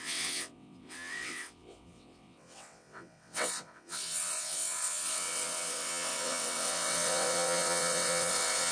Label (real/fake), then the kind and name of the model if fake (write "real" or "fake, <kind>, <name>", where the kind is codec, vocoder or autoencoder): fake, vocoder, WaveNeXt